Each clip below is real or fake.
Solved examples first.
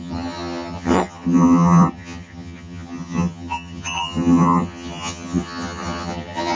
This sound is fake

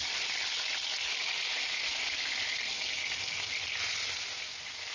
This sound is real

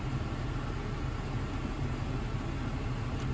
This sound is real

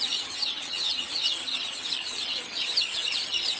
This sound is fake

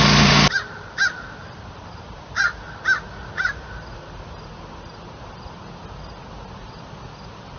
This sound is real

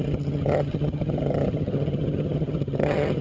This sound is fake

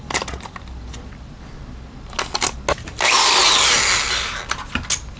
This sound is real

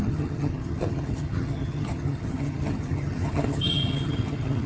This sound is fake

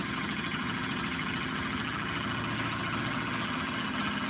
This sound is fake